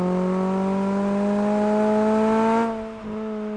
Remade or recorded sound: recorded